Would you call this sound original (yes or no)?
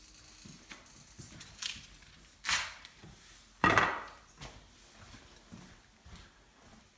yes